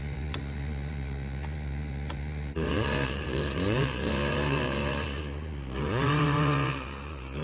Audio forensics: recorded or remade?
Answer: remade